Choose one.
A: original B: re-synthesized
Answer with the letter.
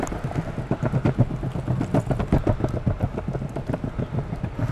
A